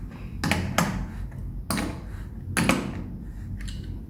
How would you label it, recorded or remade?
recorded